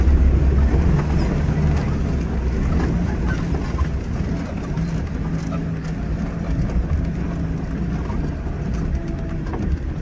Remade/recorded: recorded